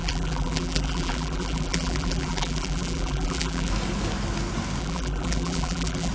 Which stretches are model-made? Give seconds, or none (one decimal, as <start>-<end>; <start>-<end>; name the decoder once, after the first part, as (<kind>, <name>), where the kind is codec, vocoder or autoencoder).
0.0-3.7 (vocoder, BigVGAN v2); 4.8-6.1